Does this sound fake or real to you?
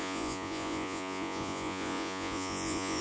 fake